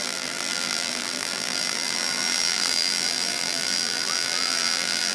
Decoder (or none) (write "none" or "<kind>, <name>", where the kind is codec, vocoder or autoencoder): vocoder, BigVGAN v2